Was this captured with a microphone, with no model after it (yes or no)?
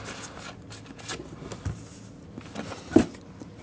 yes